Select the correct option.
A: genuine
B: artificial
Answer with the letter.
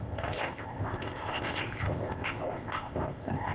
B